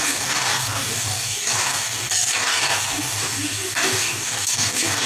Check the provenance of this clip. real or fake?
fake